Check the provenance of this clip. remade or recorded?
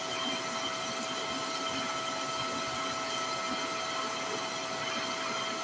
recorded